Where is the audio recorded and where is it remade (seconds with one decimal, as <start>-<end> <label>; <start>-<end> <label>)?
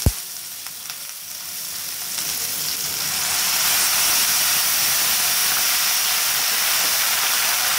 0.0-5.4 recorded; 5.4-7.8 remade